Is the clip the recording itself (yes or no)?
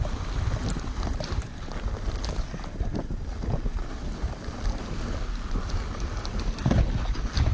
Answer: yes